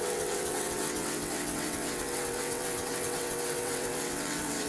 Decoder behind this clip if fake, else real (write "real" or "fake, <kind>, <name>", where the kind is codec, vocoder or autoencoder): fake, vocoder, WaveNeXt